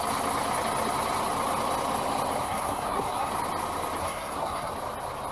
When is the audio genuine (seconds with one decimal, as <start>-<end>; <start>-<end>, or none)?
0.0-2.4; 3.3-4.0; 4.7-5.3